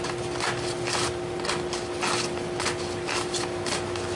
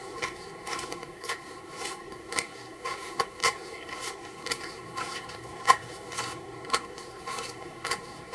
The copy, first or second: second